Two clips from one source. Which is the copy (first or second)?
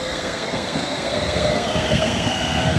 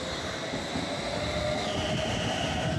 first